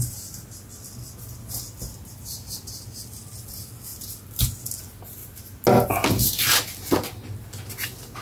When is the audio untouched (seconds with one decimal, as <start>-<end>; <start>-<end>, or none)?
0.0-8.2